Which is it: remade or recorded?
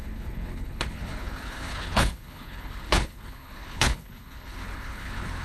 remade